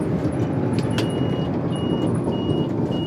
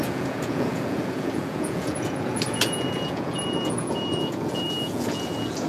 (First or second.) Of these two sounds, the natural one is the first